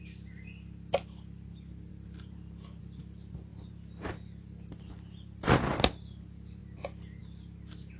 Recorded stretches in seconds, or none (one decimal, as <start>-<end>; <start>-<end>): 0.0-1.9; 2.8-8.0